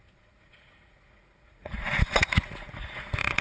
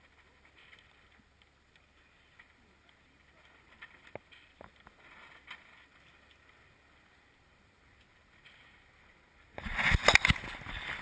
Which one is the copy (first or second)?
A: first